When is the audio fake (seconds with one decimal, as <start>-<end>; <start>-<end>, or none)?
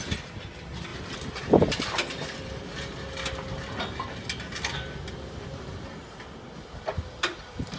0.9-1.8